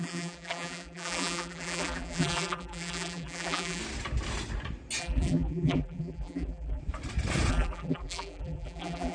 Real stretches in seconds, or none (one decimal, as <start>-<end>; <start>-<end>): 3.8-5.0; 6.8-7.5